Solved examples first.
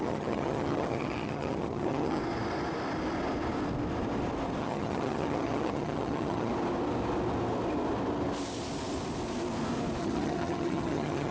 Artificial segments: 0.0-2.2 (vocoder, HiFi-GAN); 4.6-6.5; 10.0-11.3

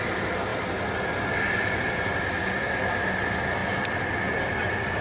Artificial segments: none

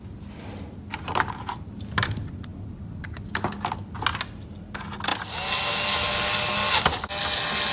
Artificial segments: none

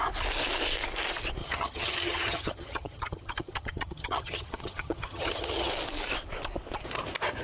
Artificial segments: 1.4-5.7 (vocoder, HiFi-GAN)

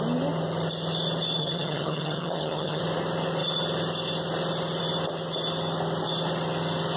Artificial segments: 1.4-2.8 (vocoder, HiFi-GAN)

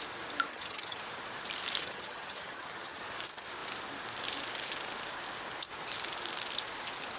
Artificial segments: 0.5-1.0 (vocoder, HiFi-GAN); 1.8-3.0